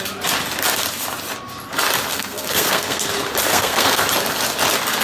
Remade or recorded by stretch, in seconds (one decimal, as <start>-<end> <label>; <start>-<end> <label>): 0.0-2.1 recorded; 2.1-3.1 remade; 3.1-3.5 recorded; 3.5-4.0 remade; 4.0-5.0 recorded